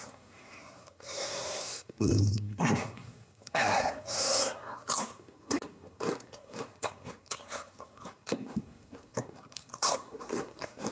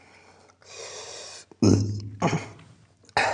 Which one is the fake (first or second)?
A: first